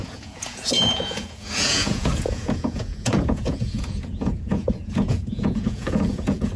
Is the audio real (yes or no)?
no